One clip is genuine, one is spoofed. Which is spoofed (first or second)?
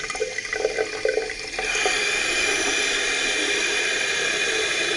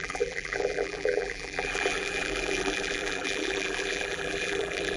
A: second